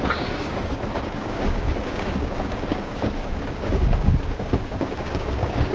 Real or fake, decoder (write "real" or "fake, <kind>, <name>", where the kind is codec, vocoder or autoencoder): fake, codec, DAC